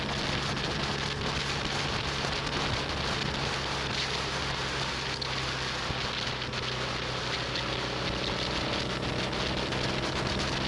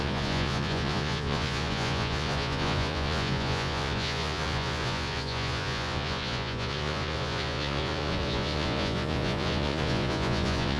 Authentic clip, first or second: first